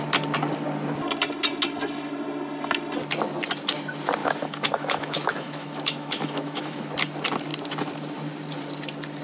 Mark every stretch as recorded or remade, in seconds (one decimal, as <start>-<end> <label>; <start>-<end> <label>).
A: 0.0-4.2 recorded; 4.2-6.9 remade; 6.9-9.2 recorded